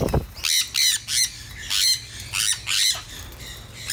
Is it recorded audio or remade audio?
recorded